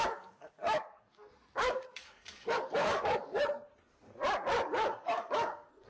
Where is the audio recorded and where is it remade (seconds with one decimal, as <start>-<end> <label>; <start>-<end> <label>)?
0.0-3.4 remade; 3.4-4.6 recorded; 4.6-5.9 remade